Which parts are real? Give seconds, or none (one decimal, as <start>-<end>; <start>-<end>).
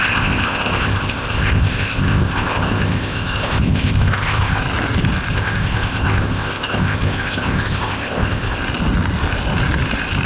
4.6-5.3; 8.6-10.3